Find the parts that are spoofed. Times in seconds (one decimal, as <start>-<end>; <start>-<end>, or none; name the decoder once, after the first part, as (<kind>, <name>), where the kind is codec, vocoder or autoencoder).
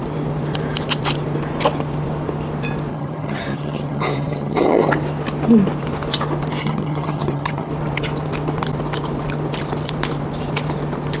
2.9-4.9 (vocoder, HiFi-GAN); 6.6-7.7